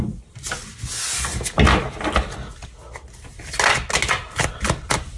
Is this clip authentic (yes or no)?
yes